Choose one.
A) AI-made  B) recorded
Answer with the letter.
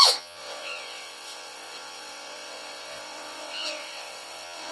A